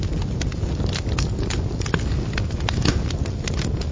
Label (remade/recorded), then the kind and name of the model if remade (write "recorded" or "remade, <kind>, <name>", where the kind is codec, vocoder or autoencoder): recorded